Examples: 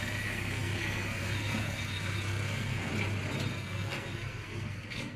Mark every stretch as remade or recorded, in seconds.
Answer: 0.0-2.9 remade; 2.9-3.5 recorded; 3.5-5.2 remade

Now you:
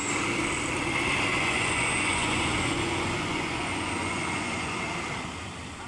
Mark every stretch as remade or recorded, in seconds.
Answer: 0.0-1.3 recorded; 1.3-4.8 remade; 4.8-5.9 recorded

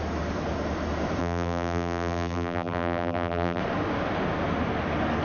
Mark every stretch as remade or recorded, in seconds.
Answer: 0.0-1.2 recorded; 1.2-3.6 remade; 3.6-5.2 recorded

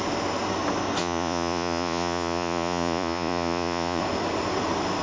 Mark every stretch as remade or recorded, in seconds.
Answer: 0.0-1.0 recorded; 1.0-4.0 remade; 4.0-5.0 recorded

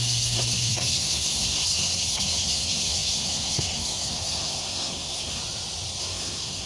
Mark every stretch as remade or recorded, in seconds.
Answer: 0.0-5.4 remade; 5.4-6.0 recorded; 6.0-6.7 remade

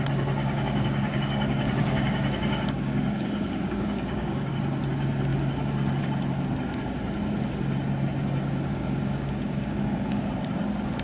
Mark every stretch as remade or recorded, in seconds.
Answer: 0.0-0.4 recorded; 0.4-4.6 remade; 4.6-8.7 recorded; 8.7-10.3 remade; 10.3-11.0 recorded

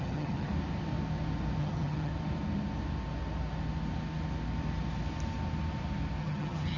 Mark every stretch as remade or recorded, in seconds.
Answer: 0.0-0.5 remade; 0.5-1.6 recorded; 1.6-2.1 remade; 2.1-6.2 recorded; 6.2-6.8 remade

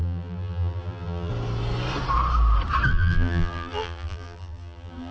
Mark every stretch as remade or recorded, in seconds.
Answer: 0.0-1.3 remade; 1.3-2.9 recorded; 2.9-5.1 remade